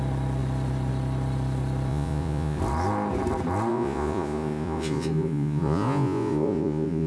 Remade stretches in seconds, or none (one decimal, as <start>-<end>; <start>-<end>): 1.9-2.6; 3.7-7.1